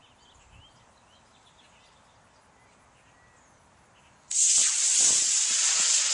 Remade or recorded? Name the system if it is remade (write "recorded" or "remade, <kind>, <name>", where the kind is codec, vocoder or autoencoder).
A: recorded